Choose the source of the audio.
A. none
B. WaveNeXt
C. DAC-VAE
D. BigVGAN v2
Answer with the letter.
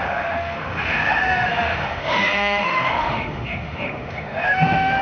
C